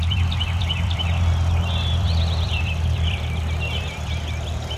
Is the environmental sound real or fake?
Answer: fake